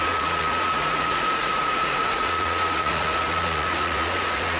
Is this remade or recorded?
remade